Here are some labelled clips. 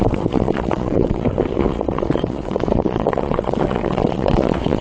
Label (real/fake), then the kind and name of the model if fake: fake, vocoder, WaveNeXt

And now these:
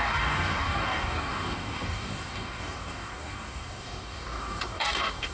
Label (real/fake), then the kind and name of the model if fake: fake, codec, DAC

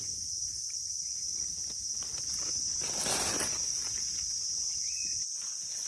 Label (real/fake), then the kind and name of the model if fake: real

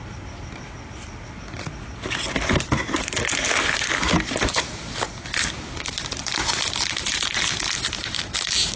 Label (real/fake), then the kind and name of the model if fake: real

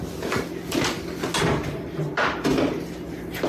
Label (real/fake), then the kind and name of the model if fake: real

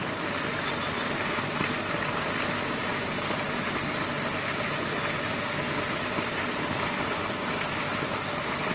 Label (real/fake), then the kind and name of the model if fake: real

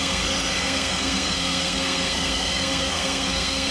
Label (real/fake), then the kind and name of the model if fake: fake, codec, SNAC